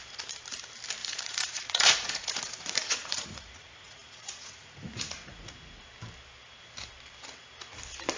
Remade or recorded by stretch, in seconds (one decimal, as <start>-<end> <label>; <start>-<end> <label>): 0.0-1.0 recorded; 1.0-5.5 remade; 5.5-8.2 recorded